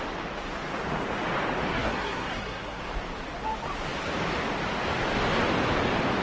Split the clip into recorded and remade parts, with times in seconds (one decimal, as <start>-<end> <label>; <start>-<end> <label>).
0.0-1.7 recorded; 1.7-2.8 remade; 2.8-6.2 recorded